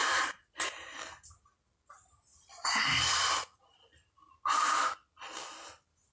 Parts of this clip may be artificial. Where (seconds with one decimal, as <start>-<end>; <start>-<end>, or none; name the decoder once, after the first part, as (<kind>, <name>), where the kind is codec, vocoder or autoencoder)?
0.0-1.3 (vocoder, BigVGAN v2); 2.3-6.1